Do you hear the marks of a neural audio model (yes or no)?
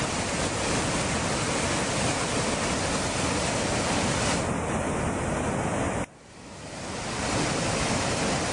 no